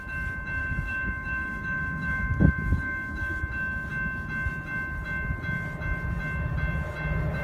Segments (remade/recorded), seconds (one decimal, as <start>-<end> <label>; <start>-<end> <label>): 0.0-0.6 recorded; 0.6-3.4 remade; 3.4-7.4 recorded